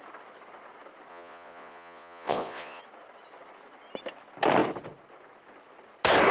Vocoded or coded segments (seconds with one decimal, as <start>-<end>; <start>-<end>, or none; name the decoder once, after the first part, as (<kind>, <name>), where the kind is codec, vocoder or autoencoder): 1.1-2.8 (vocoder, Vocos)